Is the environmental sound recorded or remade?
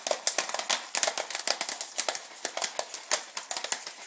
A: recorded